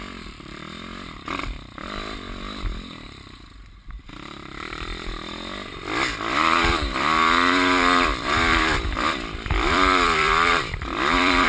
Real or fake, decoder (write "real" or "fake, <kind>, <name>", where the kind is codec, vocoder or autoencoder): fake, vocoder, BigVGAN v2